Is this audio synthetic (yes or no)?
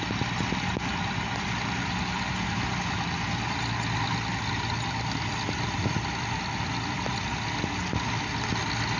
no